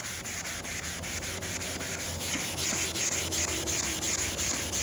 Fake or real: real